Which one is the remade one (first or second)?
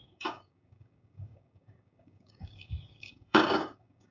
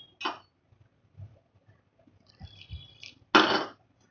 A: first